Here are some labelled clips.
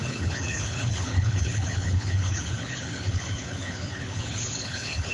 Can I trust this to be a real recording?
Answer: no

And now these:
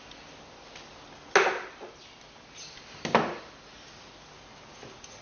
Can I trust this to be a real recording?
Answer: yes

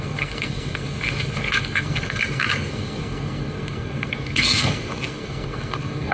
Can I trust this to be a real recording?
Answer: no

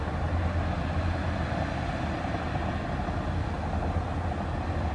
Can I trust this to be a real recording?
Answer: yes